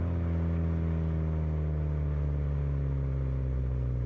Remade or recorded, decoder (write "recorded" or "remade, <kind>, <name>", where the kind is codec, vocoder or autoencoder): recorded